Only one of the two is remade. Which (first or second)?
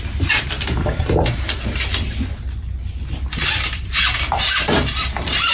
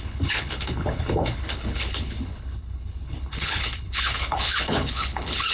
second